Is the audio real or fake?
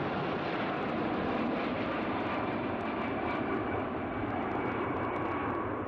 fake